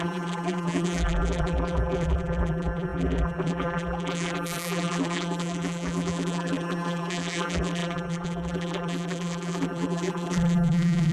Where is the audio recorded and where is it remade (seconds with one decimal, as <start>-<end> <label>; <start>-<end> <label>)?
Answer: 0.0-11.1 remade